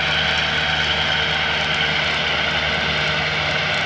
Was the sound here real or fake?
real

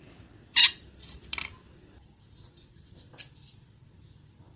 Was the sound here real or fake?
real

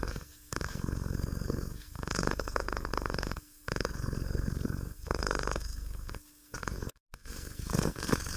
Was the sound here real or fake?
fake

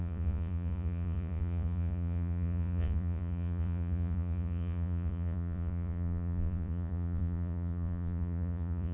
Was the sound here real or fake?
fake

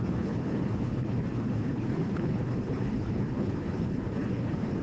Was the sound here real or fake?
fake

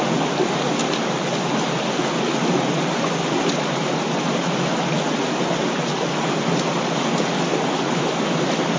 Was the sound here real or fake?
real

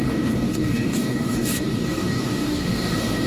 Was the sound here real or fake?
fake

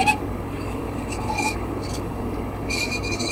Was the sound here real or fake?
fake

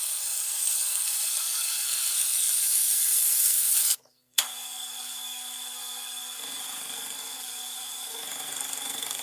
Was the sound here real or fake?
fake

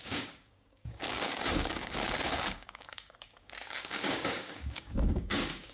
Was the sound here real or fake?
fake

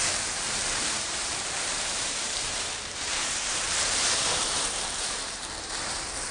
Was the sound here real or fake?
fake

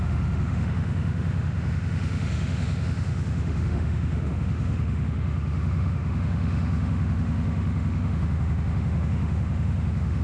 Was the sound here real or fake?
fake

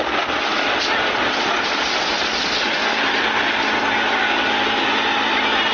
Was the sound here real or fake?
real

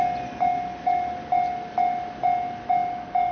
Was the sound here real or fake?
real